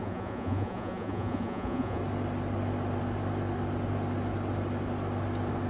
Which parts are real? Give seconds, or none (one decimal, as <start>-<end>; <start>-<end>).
2.0-5.7